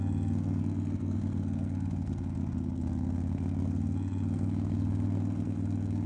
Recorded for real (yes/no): no